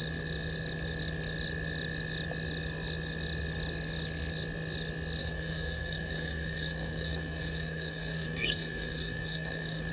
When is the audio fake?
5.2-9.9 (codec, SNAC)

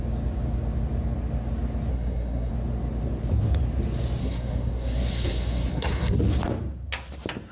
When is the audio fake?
1.9-2.5 (codec, SNAC); 4.2-6.2

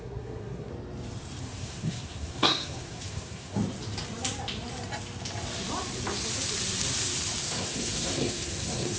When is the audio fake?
0.0-0.7 (codec, SNAC); 1.4-3.6; 7.4-9.0